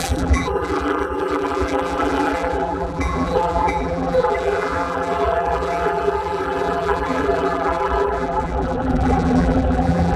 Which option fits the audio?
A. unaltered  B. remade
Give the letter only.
B